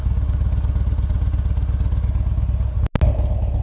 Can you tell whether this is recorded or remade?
recorded